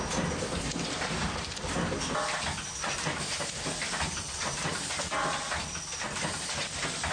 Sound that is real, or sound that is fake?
real